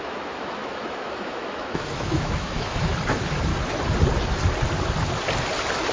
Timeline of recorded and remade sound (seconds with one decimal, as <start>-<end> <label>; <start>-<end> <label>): 0.0-3.5 remade; 3.5-5.9 recorded